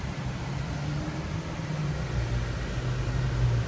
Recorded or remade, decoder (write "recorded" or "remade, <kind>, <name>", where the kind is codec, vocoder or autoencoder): recorded